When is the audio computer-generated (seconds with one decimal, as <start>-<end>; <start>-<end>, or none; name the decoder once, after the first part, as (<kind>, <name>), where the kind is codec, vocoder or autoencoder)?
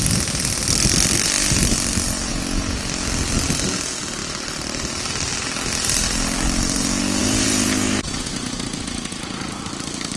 2.3-2.8 (vocoder, Vocos); 7.2-9.6